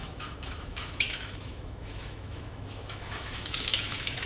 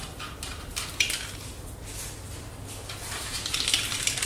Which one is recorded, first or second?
second